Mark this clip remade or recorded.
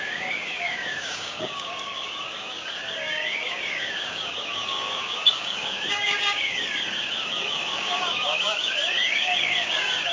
remade